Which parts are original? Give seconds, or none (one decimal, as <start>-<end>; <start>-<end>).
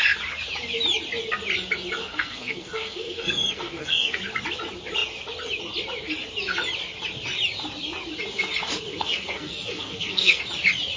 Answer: 0.0-2.0; 4.2-8.9; 10.4-11.0